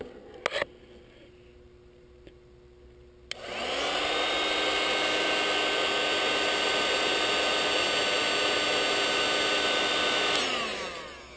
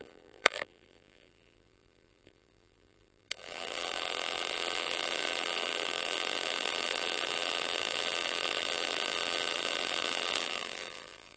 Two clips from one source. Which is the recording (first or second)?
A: first